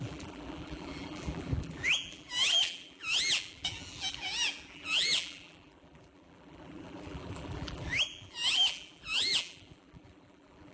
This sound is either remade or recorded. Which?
remade